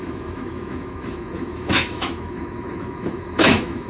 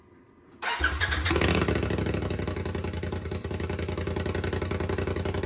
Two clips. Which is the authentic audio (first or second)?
second